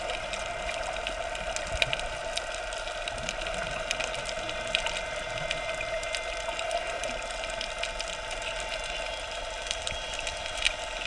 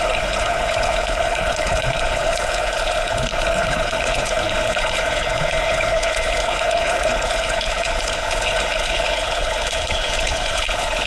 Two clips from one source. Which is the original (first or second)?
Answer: first